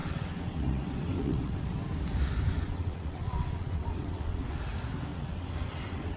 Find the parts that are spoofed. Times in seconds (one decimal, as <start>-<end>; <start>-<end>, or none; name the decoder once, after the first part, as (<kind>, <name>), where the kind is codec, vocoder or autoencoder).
0.0-1.7 (vocoder, WaveNeXt); 2.5-4.6; 5.1-6.2